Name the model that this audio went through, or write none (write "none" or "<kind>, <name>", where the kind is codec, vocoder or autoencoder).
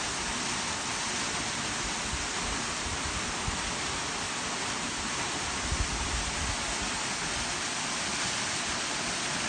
none